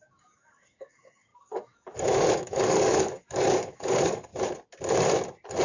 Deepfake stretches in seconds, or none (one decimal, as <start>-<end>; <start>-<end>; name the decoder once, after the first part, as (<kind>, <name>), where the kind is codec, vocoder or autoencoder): 0.0-4.3 (codec, DAC)